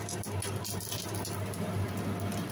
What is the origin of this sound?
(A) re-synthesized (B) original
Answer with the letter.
B